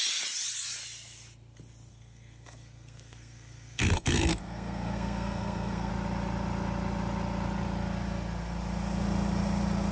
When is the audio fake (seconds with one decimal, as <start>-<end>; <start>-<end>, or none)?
1.9-5.9